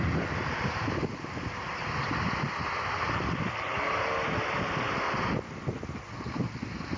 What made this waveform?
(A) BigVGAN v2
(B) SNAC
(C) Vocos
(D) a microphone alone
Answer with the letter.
D